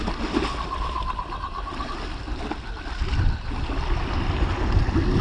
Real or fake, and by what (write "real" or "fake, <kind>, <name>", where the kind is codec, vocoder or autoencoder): real